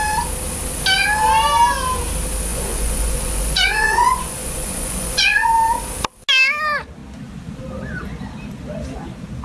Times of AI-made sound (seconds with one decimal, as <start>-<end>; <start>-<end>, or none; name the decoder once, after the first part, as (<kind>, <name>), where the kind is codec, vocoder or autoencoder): 2.5-5.5 (vocoder, Vocos)